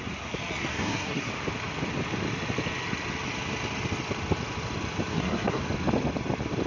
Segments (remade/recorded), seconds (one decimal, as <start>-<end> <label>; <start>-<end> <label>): 0.0-0.7 recorded; 0.7-1.3 remade; 1.3-5.1 recorded; 5.1-5.6 remade; 5.6-6.7 recorded